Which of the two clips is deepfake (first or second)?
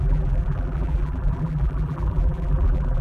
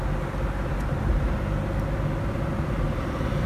first